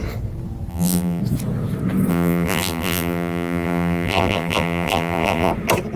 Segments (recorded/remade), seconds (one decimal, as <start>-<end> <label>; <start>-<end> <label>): 0.0-0.7 recorded; 0.7-1.2 remade; 1.2-2.1 recorded; 2.1-5.5 remade; 5.5-6.0 recorded